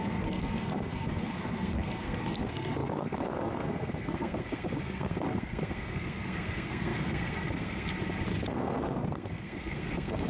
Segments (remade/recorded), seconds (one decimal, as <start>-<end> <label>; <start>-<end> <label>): 0.0-7.9 remade; 7.9-8.5 recorded; 8.5-10.3 remade